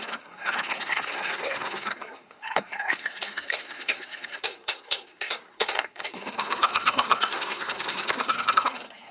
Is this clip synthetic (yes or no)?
yes